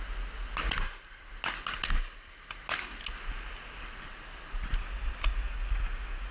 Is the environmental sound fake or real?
real